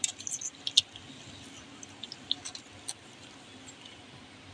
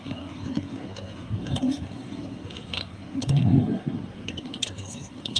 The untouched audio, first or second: first